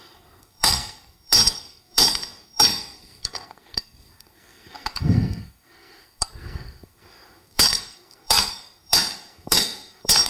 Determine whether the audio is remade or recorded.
remade